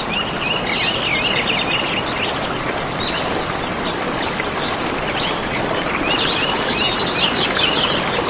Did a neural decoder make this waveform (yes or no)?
no